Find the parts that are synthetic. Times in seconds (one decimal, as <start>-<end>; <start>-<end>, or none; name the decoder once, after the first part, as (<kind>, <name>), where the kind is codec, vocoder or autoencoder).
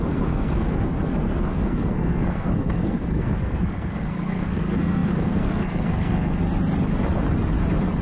0.0-6.4 (codec, SNAC)